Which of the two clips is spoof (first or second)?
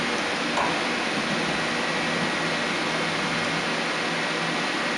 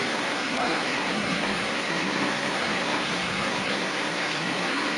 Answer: second